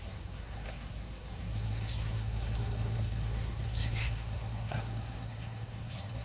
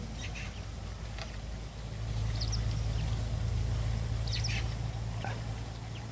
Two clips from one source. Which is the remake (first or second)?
first